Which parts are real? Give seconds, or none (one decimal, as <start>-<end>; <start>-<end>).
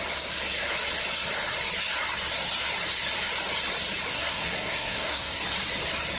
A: 0.0-4.1; 5.4-6.2